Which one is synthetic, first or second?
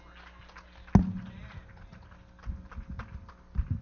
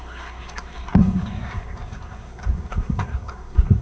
second